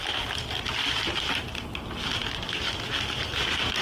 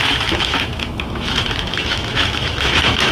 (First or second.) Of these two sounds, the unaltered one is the first